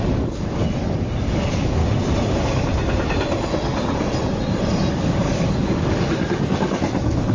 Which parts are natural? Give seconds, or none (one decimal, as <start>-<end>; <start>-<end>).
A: 0.6-1.2; 1.8-4.9